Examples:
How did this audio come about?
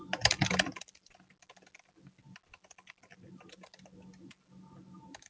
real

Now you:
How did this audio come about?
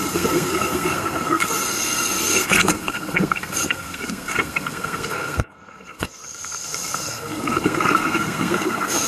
fake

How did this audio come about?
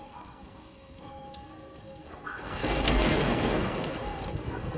fake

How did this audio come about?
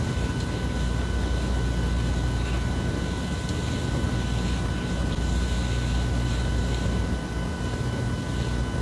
real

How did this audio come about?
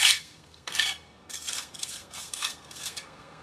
fake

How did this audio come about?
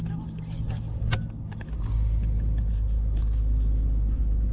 real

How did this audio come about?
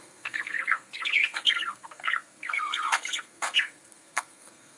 fake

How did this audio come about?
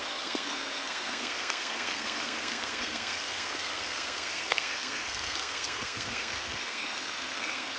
fake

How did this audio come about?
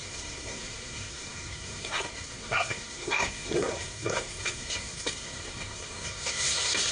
fake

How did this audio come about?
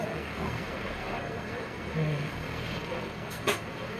fake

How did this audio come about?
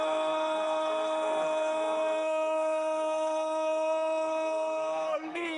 fake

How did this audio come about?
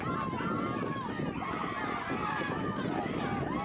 real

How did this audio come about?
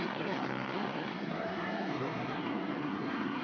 fake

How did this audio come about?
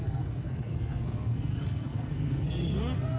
fake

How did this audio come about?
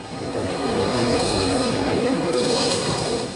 fake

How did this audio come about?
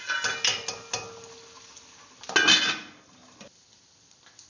real